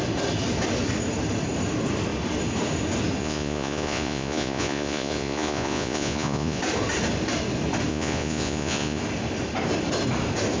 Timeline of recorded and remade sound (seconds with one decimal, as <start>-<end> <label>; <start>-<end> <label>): 0.0-3.2 recorded; 3.2-6.6 remade; 6.6-7.9 recorded; 7.9-9.0 remade; 9.0-10.6 recorded